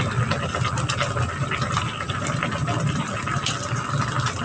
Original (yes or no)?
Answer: yes